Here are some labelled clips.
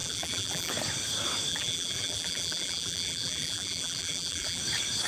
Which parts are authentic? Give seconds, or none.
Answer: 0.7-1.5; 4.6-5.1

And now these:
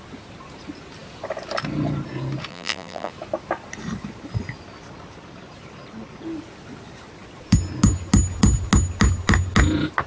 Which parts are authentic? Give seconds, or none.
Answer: 0.0-2.5; 3.1-10.1

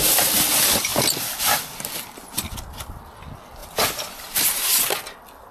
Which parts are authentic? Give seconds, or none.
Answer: 0.0-0.9; 3.2-3.6; 5.0-5.5

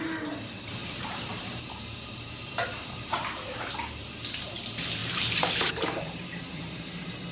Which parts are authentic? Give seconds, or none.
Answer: 0.0-0.8; 3.7-5.0; 6.8-7.3

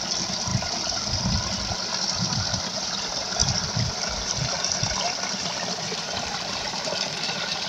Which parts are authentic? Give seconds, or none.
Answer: 0.5-1.9

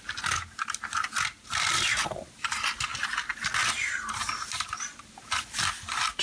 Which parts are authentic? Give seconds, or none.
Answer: 0.0-6.2

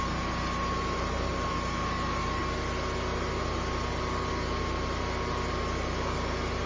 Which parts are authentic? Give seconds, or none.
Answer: 2.4-6.7

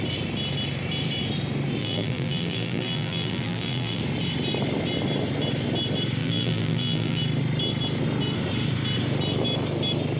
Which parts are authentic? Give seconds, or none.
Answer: 0.0-1.8; 4.0-6.2; 7.2-10.2